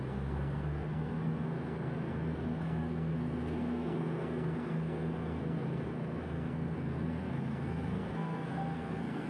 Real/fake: fake